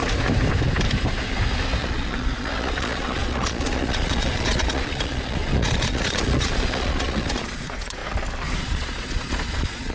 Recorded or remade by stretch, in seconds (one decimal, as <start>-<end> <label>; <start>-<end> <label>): 0.0-1.8 recorded; 1.8-8.0 remade; 8.0-8.6 recorded; 8.6-9.9 remade